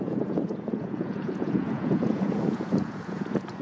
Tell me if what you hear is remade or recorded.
remade